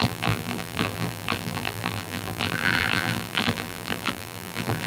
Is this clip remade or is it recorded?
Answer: remade